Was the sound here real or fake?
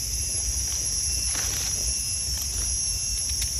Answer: real